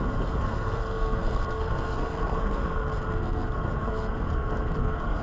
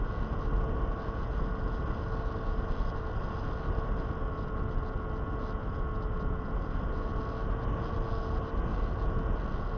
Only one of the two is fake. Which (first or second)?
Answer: first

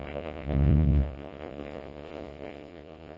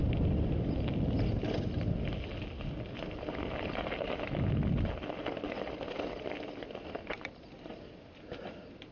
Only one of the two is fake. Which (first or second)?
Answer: first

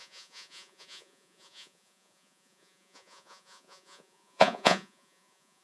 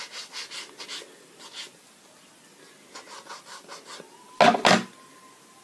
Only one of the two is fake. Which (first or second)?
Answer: first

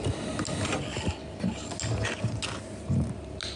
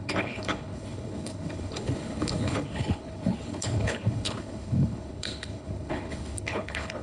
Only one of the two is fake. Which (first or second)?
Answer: second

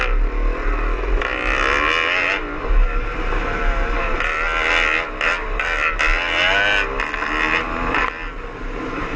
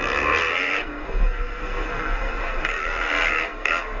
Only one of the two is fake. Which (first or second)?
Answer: second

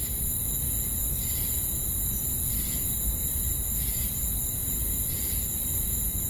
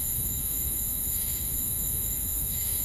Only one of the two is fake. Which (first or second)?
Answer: second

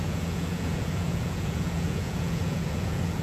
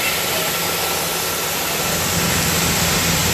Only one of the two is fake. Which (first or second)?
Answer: first